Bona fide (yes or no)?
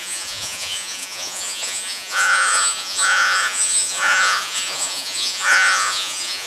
no